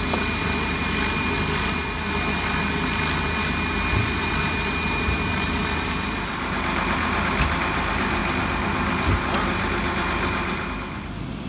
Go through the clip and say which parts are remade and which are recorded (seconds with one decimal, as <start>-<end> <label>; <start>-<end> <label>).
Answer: 0.0-11.5 recorded